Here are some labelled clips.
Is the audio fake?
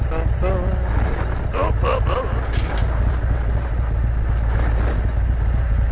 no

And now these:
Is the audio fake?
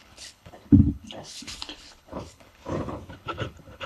yes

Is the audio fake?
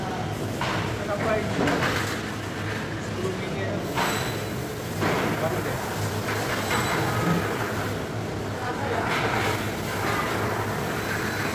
no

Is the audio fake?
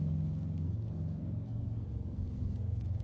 yes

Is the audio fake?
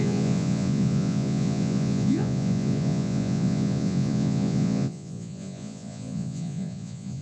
yes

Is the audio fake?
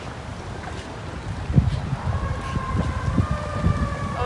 no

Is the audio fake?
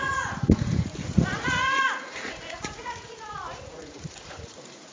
yes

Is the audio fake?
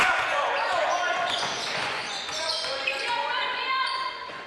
yes